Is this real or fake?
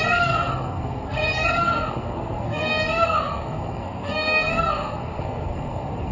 fake